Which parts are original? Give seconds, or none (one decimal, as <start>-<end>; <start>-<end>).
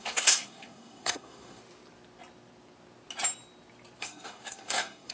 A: 1.6-4.0